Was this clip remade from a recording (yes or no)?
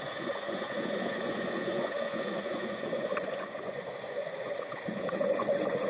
yes